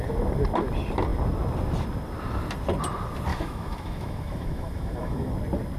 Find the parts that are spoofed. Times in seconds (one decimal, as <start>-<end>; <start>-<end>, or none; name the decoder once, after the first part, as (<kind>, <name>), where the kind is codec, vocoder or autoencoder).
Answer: 3.3-5.3 (autoencoder, DAC-VAE)